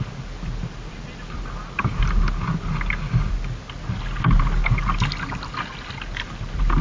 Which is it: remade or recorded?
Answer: recorded